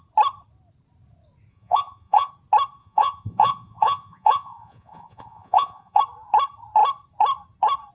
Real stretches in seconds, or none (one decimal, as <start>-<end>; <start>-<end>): 0.0-1.5; 2.3-2.8; 6.0-7.9